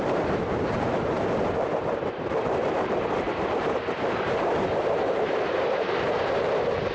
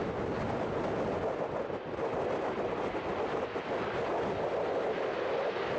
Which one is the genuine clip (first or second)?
second